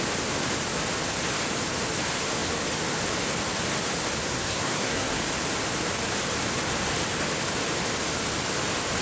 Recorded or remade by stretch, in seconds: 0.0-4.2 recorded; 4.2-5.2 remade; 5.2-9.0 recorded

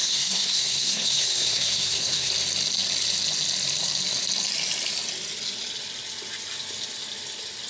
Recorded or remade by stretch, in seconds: 0.0-2.3 remade; 2.3-7.7 recorded